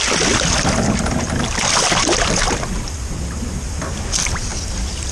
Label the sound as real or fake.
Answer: real